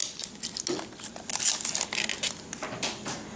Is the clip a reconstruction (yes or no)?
no